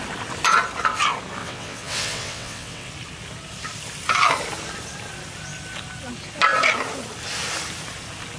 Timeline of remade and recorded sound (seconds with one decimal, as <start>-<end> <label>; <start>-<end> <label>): 0.0-1.4 recorded; 1.4-2.9 remade; 2.9-8.4 recorded